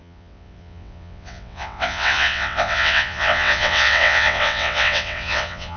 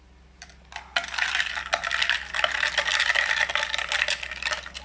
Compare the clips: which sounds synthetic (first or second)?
first